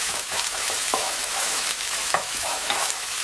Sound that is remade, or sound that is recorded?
remade